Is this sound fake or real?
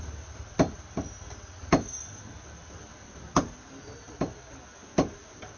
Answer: real